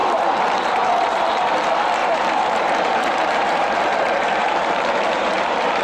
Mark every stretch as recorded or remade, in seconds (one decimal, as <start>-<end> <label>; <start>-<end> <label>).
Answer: 0.0-2.0 recorded; 2.0-5.8 remade